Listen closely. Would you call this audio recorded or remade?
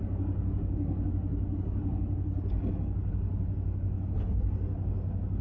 recorded